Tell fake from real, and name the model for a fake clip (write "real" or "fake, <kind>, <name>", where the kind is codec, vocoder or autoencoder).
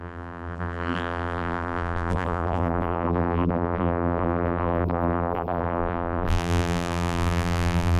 fake, vocoder, BigVGAN v2